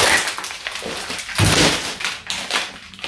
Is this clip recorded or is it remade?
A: recorded